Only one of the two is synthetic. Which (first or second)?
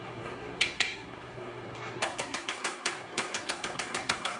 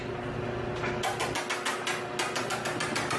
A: first